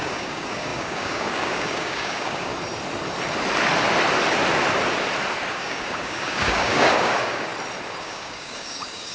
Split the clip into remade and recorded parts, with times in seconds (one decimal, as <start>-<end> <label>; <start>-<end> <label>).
0.0-2.5 remade; 2.5-5.5 recorded; 5.5-7.5 remade; 7.5-8.0 recorded; 8.0-9.1 remade